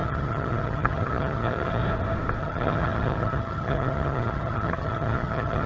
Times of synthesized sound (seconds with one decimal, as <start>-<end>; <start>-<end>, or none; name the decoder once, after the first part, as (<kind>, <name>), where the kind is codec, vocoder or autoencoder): 0.0-1.8 (vocoder, HiFi-GAN); 2.4-5.7